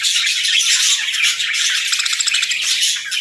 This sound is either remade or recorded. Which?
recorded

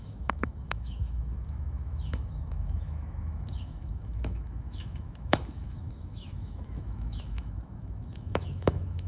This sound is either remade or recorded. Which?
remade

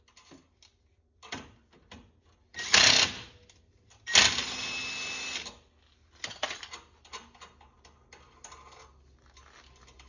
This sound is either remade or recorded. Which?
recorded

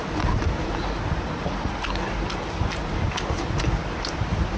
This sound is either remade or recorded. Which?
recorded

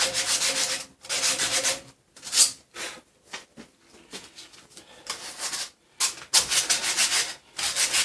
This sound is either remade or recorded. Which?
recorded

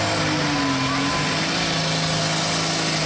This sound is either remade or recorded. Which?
recorded